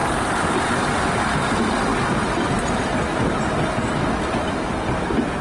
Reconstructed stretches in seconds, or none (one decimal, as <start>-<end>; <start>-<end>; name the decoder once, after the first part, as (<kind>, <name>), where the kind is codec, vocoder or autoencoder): 0.0-1.9 (vocoder, BigVGAN v2); 4.1-5.4